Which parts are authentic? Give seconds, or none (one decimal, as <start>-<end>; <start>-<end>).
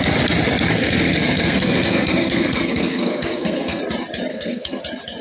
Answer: 0.0-0.7; 3.8-4.3; 4.8-5.2